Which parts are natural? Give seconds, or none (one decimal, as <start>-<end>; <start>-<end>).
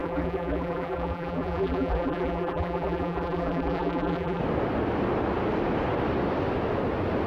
4.4-7.3